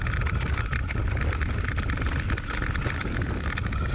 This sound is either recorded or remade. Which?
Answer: recorded